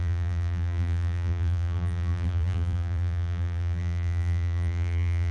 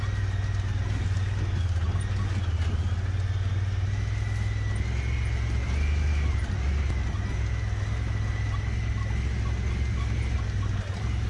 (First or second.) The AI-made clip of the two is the first